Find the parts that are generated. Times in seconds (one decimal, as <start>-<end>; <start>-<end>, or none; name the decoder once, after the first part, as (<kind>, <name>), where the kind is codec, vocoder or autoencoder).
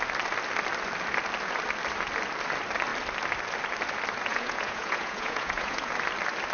4.3-5.9 (vocoder, Vocos)